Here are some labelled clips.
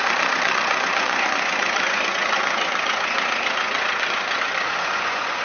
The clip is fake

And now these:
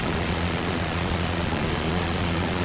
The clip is fake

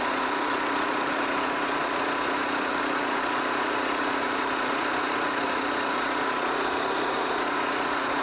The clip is fake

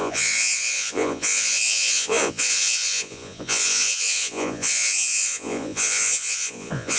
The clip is fake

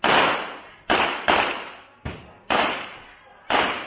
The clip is real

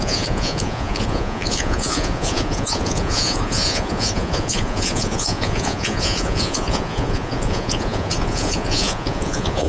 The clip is fake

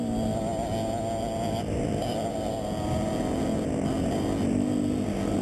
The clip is real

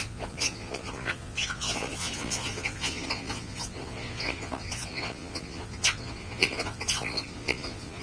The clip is fake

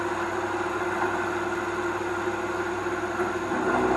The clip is real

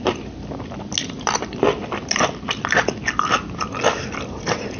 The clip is real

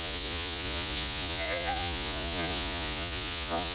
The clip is fake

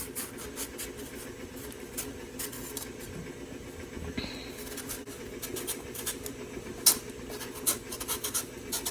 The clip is real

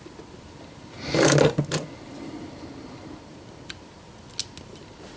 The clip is real